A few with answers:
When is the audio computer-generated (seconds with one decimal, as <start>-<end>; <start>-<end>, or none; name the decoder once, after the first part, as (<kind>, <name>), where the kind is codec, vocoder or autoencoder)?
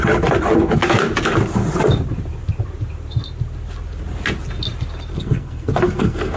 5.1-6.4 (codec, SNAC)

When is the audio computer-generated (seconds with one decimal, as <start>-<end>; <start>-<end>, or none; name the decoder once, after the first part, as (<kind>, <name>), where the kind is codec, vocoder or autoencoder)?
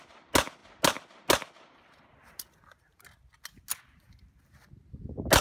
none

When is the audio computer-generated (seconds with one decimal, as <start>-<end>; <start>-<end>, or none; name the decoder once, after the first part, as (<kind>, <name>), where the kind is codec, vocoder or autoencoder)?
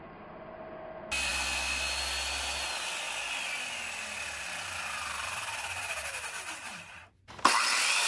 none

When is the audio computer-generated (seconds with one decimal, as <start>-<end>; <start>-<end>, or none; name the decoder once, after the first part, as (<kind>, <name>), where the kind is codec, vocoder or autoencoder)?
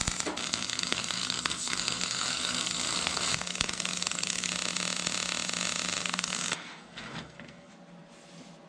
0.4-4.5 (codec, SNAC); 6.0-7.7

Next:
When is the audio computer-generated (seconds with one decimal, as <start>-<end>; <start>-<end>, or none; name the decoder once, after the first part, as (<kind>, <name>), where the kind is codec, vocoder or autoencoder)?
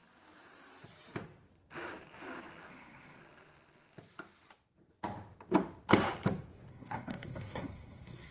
2.7-3.2 (codec, SNAC); 6.7-8.3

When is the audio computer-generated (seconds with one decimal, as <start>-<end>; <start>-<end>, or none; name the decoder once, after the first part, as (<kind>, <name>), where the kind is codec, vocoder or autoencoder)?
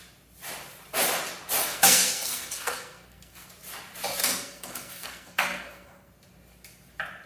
1.6-3.5 (codec, SNAC); 4.2-6.1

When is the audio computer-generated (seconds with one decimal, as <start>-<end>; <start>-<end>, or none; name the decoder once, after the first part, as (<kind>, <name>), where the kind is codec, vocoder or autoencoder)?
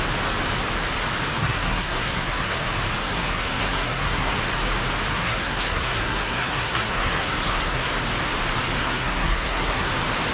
1.4-2.6 (codec, SNAC); 3.0-4.4; 5.1-7.9; 8.8-9.9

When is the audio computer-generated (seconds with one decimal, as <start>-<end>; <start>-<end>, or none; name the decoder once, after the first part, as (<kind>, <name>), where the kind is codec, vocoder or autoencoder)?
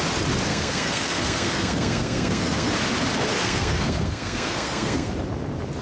0.5-2.7 (codec, SNAC); 3.4-5.1